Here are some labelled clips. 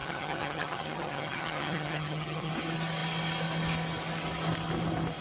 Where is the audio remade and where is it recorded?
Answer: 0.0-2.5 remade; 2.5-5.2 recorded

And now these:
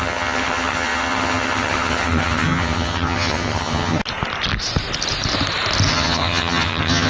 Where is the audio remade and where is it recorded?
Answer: 0.0-4.0 remade; 4.0-5.9 recorded; 5.9-7.1 remade

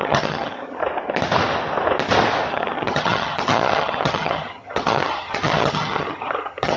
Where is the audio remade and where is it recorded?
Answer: 0.0-0.8 remade; 0.8-2.5 recorded; 2.5-6.8 remade

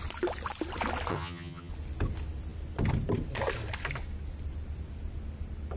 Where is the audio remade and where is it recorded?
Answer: 0.0-1.1 recorded; 1.1-1.7 remade; 1.7-5.8 recorded